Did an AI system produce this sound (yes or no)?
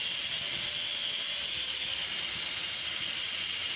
no